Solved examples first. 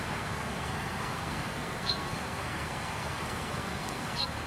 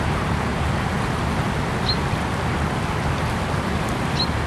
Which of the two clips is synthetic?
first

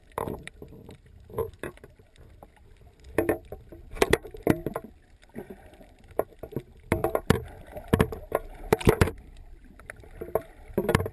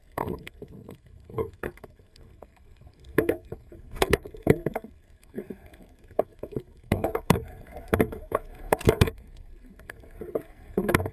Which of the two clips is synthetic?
second